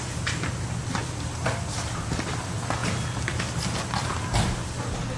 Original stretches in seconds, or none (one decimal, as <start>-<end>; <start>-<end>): 0.0-5.2